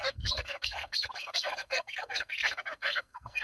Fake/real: fake